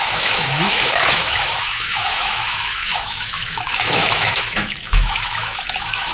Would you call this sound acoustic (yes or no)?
no